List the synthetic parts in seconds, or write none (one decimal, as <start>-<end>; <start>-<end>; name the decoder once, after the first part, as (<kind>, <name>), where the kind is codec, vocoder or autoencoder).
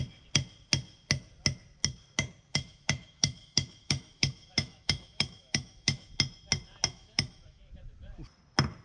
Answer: 2.5-6.1 (autoencoder, DAC-VAE); 6.9-7.6